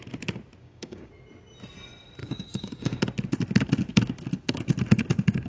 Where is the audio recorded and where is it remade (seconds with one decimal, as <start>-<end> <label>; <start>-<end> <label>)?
0.0-0.6 recorded; 0.6-1.1 remade; 1.1-2.2 recorded; 2.2-3.0 remade; 3.0-5.5 recorded

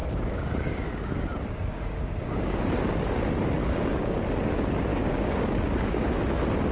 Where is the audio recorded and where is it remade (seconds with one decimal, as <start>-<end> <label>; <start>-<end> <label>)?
0.0-2.6 remade; 2.6-3.6 recorded; 3.6-4.2 remade; 4.2-4.9 recorded; 4.9-6.2 remade; 6.2-6.7 recorded

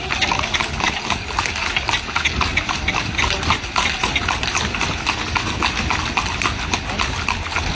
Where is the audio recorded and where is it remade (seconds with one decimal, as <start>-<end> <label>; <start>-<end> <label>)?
0.0-2.5 recorded; 2.5-3.0 remade; 3.0-7.7 recorded

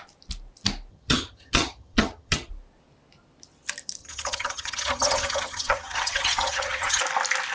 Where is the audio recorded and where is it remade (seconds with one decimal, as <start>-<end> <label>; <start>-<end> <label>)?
0.0-0.9 recorded; 0.9-2.5 remade; 2.5-4.0 recorded; 4.0-7.0 remade; 7.0-7.5 recorded

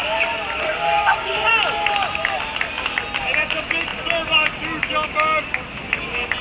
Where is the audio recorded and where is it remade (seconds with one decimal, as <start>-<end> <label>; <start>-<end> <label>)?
0.0-0.6 recorded; 0.6-1.5 remade; 1.5-6.4 recorded